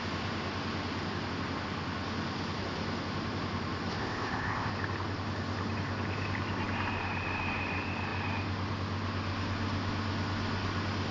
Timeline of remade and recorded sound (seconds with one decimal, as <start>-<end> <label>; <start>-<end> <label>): 0.0-4.0 recorded; 4.0-4.7 remade; 4.7-11.1 recorded